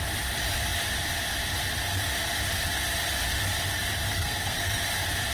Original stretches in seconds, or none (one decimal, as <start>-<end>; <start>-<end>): 0.0-4.1; 4.8-5.3